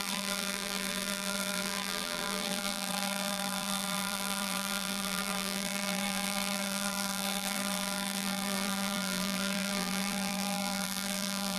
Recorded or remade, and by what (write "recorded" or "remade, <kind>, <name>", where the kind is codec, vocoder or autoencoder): remade, vocoder, BigVGAN v2